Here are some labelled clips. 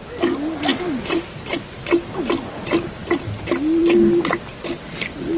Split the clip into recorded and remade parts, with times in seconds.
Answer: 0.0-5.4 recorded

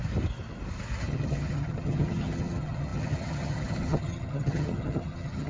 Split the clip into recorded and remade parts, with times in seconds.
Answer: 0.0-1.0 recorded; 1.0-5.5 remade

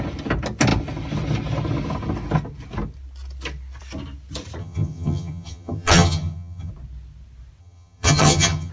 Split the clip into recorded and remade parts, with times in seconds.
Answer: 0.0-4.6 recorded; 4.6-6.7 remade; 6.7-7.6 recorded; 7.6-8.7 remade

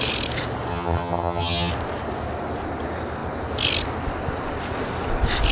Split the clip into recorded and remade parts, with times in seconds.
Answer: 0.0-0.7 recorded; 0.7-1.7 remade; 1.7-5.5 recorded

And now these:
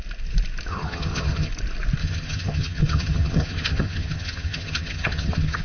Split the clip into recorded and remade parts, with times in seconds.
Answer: 0.0-0.7 recorded; 0.7-1.5 remade; 1.5-2.0 recorded; 2.0-5.6 remade

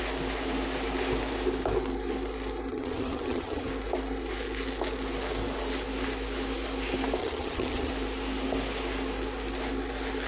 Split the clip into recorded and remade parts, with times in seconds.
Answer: 0.0-2.7 recorded; 2.7-3.7 remade; 3.7-7.2 recorded; 7.2-7.9 remade; 7.9-10.3 recorded

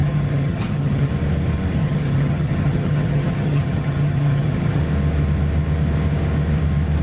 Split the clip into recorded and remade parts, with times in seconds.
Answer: 0.0-1.1 remade; 1.1-1.8 recorded; 1.8-4.8 remade; 4.8-7.0 recorded

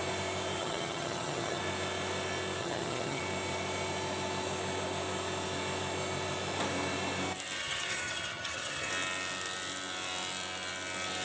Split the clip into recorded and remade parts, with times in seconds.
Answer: 0.0-0.6 recorded; 0.6-1.6 remade; 1.6-2.6 recorded; 2.6-3.2 remade; 3.2-7.6 recorded; 7.6-8.9 remade; 8.9-11.2 recorded